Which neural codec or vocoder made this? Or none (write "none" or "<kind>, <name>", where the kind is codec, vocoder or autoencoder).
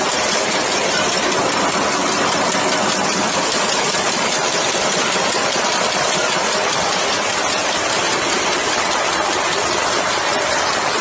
none